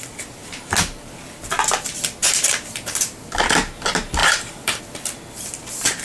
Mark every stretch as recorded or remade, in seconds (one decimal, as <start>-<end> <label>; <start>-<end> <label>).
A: 0.0-0.4 recorded; 0.4-1.0 remade; 1.0-2.2 recorded; 2.2-3.4 remade; 3.4-4.2 recorded; 4.2-4.8 remade; 4.8-6.0 recorded